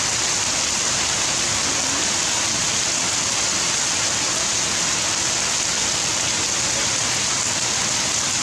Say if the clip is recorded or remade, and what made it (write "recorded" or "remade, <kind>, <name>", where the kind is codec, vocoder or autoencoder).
recorded